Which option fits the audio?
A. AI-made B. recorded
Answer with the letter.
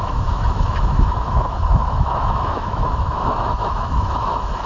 A